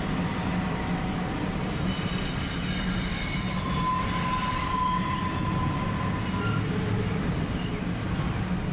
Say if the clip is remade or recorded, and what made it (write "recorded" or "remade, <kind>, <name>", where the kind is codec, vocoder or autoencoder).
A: recorded